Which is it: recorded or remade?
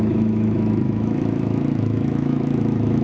remade